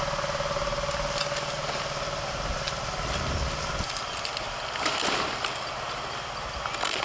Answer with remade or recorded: recorded